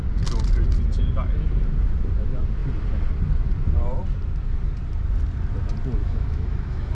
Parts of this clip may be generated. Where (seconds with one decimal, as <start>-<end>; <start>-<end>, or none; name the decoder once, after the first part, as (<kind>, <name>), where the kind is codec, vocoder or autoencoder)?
6.0-6.9 (autoencoder, DAC-VAE)